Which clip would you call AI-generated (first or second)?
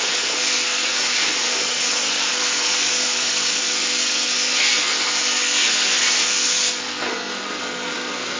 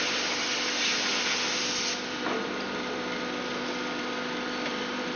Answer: first